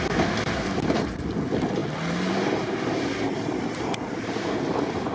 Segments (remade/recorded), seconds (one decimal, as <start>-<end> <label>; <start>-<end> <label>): 0.0-5.1 recorded

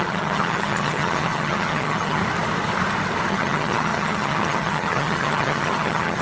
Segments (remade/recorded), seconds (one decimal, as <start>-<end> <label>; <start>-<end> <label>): 0.0-2.2 remade; 2.2-3.3 recorded; 3.3-6.2 remade

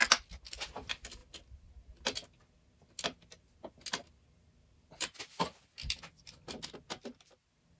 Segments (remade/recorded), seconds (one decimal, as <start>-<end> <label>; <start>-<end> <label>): 0.0-7.8 recorded